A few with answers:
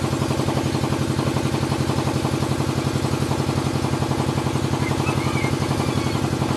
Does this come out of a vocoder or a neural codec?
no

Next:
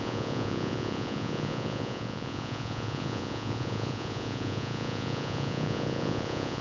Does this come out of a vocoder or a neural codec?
yes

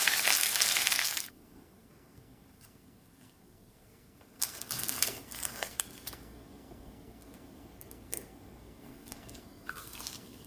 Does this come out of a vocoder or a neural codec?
yes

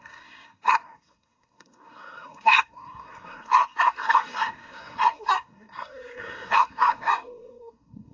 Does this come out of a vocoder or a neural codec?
yes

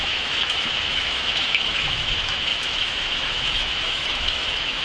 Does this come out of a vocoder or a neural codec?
yes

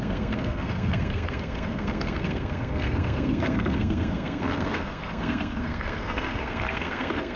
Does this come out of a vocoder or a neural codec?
yes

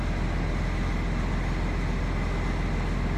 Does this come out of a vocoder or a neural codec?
no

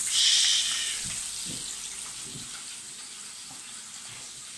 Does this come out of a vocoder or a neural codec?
no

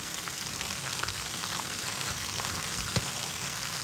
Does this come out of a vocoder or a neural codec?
yes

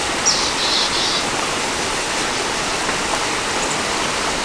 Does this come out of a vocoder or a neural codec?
no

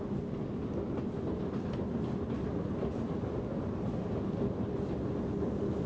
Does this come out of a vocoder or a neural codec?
no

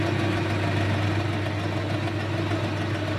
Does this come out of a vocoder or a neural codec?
no